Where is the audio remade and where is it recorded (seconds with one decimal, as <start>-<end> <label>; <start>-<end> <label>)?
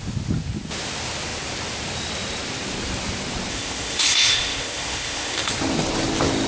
0.0-3.5 recorded; 3.5-5.5 remade; 5.5-6.5 recorded